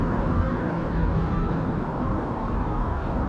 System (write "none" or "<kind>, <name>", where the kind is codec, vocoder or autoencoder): codec, DAC